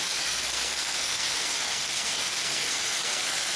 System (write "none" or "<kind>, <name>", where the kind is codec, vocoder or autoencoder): codec, SNAC